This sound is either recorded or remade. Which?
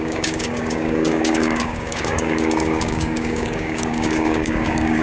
remade